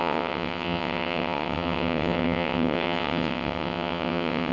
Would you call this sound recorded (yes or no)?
no